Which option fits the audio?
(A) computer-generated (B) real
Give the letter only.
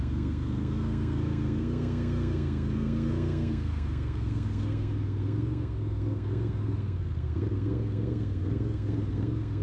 A